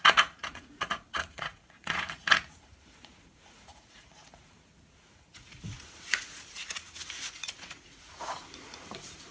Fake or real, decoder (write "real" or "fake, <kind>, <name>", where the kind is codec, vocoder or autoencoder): fake, vocoder, Vocos